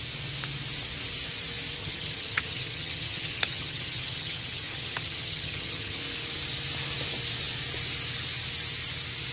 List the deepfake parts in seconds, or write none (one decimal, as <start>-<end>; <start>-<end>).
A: 1.8-6.0